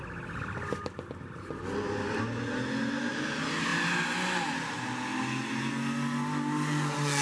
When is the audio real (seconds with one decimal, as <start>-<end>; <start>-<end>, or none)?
0.0-7.2